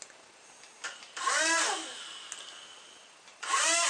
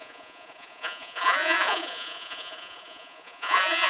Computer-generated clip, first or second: second